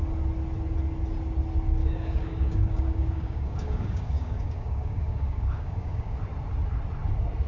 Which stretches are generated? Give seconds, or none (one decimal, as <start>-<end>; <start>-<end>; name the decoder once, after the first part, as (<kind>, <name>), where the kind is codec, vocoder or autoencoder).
1.8-6.2 (codec, DAC)